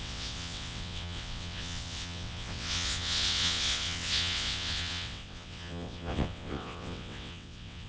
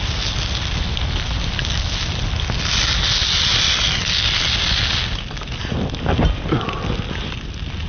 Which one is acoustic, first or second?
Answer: second